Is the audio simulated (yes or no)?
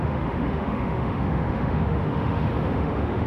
yes